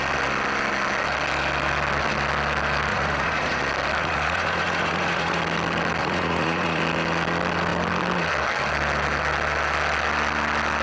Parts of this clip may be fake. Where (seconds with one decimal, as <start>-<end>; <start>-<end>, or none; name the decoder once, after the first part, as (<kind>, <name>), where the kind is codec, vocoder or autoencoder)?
2.9-3.6 (vocoder, Vocos); 4.0-5.4; 6.0-6.8